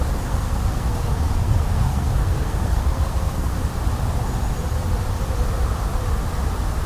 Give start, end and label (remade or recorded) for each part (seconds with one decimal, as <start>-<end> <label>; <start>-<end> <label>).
0.0-3.6 remade; 3.6-6.9 recorded